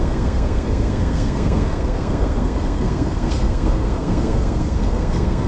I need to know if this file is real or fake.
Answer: fake